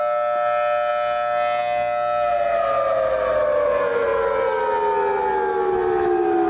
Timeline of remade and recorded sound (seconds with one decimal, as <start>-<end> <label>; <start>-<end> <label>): 0.0-6.5 recorded